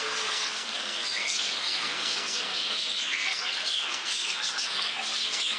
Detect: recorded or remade remade